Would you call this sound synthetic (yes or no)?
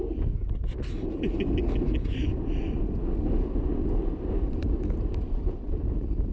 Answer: no